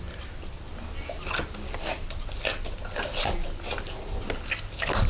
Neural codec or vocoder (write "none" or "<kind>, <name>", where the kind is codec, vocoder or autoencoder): none